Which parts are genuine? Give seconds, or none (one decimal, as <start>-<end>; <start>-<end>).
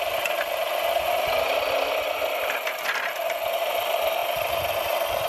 0.0-5.3